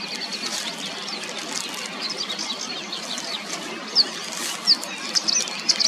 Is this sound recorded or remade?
recorded